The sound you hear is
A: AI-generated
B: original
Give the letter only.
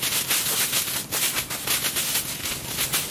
B